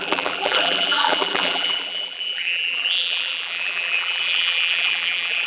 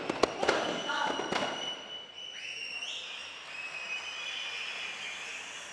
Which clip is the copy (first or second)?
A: first